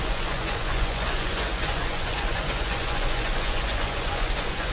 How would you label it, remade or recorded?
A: remade